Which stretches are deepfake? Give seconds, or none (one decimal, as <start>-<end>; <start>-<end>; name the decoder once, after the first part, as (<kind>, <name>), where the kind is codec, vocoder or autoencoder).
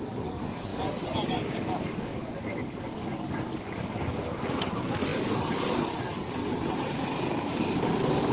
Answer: 0.0-6.4 (codec, DAC); 7.0-8.3